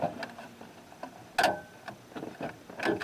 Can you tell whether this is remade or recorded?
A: recorded